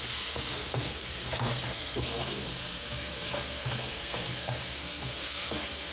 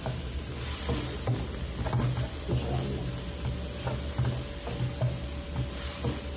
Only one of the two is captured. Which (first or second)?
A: second